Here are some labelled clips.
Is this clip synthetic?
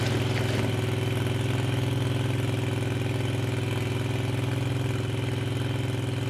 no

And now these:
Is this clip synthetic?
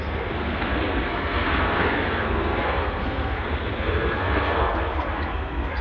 yes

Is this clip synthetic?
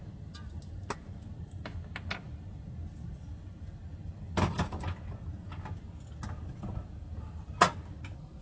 no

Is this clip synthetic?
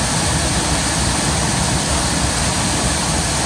no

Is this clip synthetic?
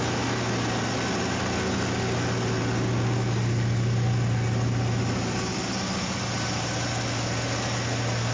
no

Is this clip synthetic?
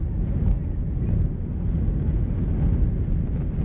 no